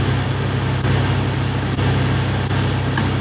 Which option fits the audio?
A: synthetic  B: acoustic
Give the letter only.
B